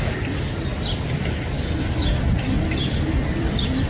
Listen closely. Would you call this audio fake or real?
real